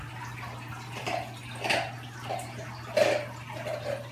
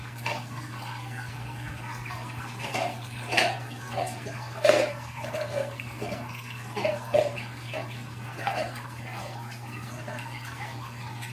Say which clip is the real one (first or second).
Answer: first